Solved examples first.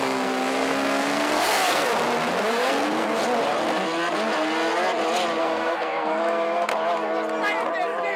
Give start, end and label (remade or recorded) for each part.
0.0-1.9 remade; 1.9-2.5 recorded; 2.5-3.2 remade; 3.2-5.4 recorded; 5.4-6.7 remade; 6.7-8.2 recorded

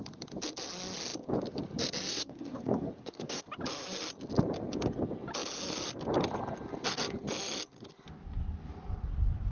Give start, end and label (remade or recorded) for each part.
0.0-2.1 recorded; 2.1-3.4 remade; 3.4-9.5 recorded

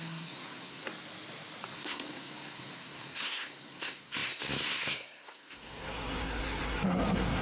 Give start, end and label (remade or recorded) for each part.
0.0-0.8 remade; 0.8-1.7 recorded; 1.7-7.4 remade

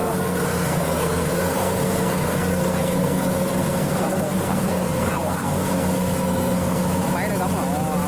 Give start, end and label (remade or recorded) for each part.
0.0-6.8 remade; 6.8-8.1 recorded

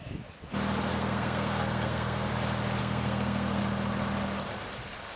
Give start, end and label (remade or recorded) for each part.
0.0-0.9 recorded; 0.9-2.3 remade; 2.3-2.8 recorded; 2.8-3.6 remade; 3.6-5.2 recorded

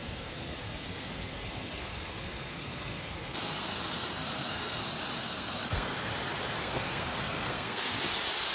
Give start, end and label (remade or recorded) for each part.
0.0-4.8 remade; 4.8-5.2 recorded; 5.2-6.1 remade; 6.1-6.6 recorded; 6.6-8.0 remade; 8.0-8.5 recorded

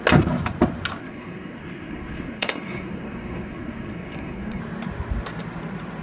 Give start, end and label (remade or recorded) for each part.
0.0-1.0 recorded; 1.0-4.6 remade; 4.6-6.0 recorded

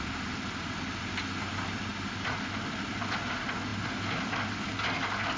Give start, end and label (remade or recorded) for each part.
0.0-5.4 recorded